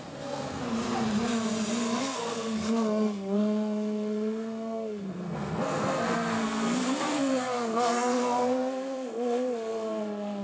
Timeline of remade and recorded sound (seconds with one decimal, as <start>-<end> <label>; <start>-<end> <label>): 0.0-0.6 remade; 0.6-2.0 recorded; 2.0-10.4 remade